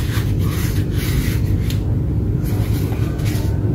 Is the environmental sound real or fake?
real